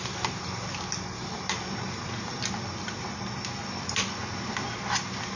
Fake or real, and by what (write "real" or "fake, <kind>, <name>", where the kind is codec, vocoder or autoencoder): real